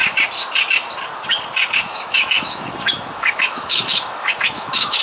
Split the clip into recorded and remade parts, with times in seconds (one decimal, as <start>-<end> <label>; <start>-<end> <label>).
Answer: 0.0-1.9 recorded; 1.9-5.0 remade